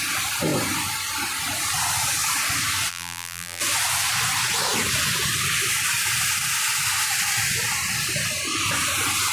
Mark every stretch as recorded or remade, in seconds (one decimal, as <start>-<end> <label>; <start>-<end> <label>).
0.0-2.9 recorded; 2.9-3.6 remade; 3.6-9.3 recorded